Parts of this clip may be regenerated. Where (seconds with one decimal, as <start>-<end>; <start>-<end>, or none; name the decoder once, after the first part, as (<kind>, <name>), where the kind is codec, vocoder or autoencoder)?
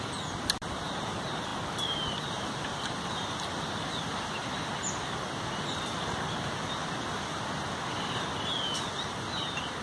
none